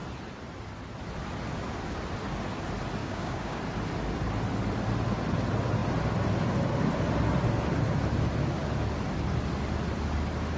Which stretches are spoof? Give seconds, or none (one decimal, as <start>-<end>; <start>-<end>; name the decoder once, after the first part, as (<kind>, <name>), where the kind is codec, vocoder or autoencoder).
3.0-3.6 (codec, DAC)